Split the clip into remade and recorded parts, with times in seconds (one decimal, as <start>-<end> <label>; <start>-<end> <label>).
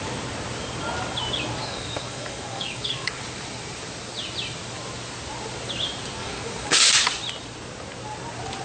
0.0-1.6 recorded; 1.6-3.2 remade; 3.2-6.2 recorded; 6.2-6.9 remade; 6.9-8.6 recorded